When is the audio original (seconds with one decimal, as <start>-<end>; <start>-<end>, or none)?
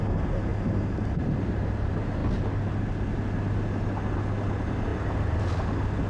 0.0-6.1